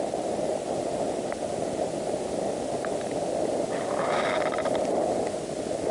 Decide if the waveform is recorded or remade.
recorded